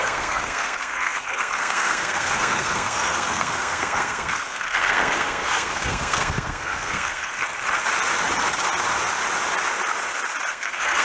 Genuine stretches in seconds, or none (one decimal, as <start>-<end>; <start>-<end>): 7.3-10.5